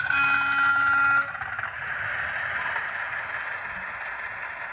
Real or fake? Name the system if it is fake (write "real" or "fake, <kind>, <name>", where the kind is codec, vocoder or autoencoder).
real